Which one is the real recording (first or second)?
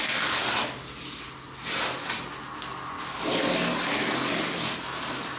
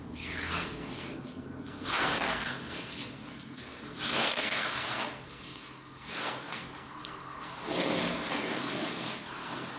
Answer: first